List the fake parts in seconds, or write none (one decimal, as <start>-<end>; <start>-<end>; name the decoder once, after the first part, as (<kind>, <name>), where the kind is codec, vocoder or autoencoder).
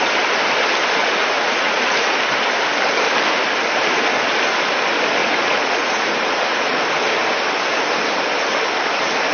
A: 1.0-2.2 (vocoder, Vocos); 5.2-6.8